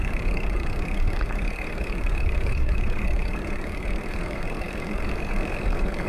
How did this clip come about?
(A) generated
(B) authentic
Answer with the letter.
A